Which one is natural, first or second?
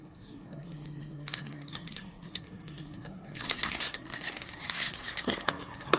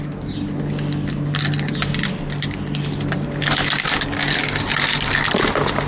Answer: second